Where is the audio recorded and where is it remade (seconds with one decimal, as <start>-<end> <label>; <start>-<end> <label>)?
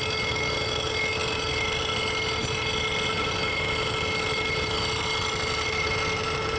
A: 0.0-6.6 recorded